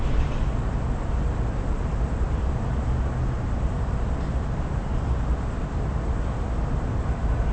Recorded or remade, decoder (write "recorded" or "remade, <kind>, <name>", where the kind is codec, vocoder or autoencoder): recorded